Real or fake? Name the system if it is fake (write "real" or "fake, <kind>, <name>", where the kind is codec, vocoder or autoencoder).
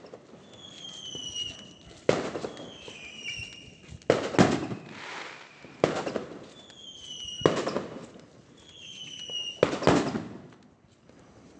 real